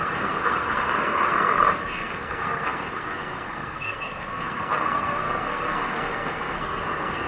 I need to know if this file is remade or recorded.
remade